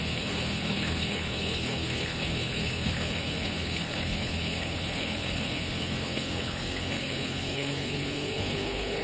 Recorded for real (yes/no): no